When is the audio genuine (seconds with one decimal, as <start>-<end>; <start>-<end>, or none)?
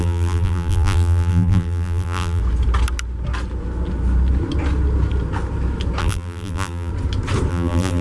2.4-6.0; 6.9-7.5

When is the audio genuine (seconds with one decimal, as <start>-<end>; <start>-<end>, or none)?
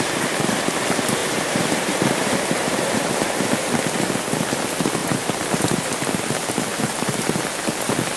0.0-1.2; 3.1-5.0; 6.1-6.7; 7.4-8.2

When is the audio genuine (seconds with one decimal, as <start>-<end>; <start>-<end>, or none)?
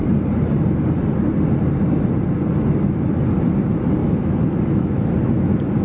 0.0-4.0; 4.9-5.8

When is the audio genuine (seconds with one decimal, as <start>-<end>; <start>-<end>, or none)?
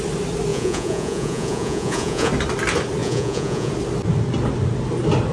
0.0-0.5; 2.3-3.0; 3.7-5.3